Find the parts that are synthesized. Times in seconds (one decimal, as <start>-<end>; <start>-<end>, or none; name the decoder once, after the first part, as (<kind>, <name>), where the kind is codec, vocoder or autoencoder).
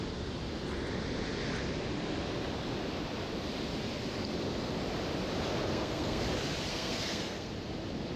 5.7-6.2 (codec, SNAC); 6.7-7.5